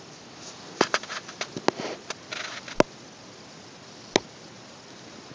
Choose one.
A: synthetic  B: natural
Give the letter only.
B